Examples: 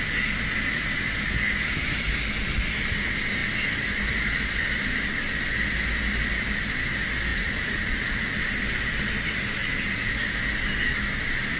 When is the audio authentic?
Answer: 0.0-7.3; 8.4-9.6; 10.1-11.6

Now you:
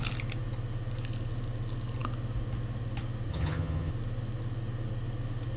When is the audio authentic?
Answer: 0.0-3.3; 3.9-5.6

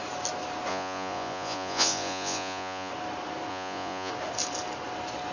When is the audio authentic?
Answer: 0.0-0.7; 2.9-3.5; 4.1-5.3

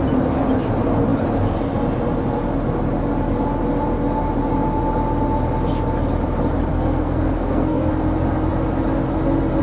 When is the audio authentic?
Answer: 0.0-6.7; 7.9-9.6

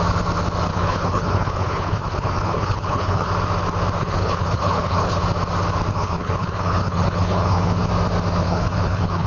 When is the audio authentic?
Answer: 0.0-0.7; 3.3-4.0; 5.2-5.9; 7.9-8.4

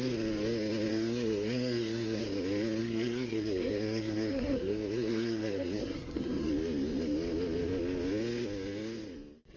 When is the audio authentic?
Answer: 0.0-0.9; 2.2-2.8; 6.5-9.6